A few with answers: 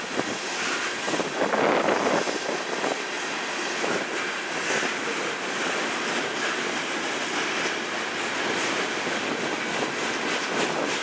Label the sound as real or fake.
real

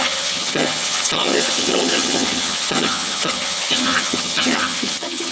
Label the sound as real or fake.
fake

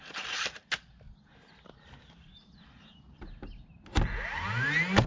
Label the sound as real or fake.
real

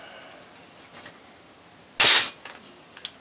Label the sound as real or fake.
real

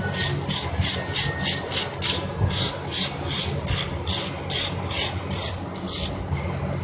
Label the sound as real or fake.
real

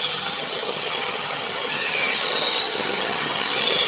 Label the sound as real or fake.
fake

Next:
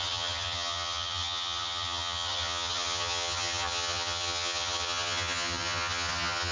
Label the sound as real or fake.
fake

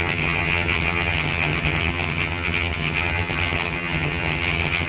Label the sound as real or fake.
fake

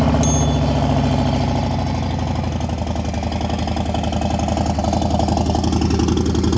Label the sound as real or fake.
real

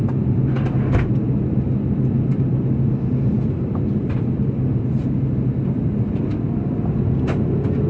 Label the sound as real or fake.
real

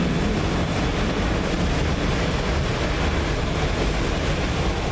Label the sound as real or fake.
real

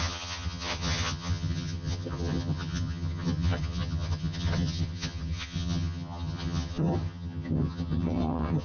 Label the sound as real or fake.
fake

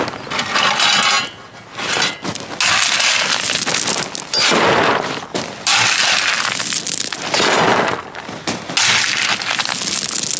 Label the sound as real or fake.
real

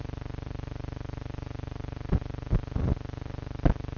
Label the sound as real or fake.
real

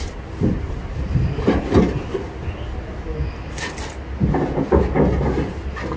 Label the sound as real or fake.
real